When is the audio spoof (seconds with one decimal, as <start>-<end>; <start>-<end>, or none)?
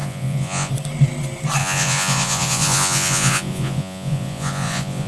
0.0-0.7; 1.6-5.1